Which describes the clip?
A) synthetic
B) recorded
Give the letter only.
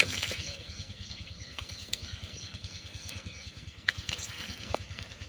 A